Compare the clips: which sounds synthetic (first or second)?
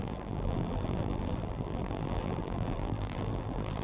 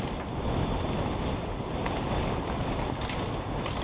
first